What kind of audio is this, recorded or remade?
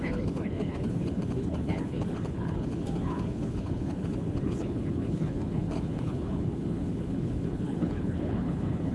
remade